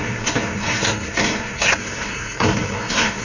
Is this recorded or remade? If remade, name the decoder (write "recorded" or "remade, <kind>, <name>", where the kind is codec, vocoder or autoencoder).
remade, codec, SNAC